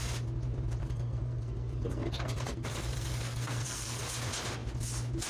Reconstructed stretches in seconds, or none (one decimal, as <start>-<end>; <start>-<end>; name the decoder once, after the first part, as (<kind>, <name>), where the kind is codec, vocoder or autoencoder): 0.8-4.0 (codec, SNAC)